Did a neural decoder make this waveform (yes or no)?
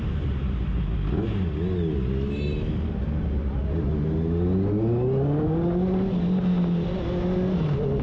no